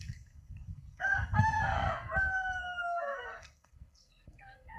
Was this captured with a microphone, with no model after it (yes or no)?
no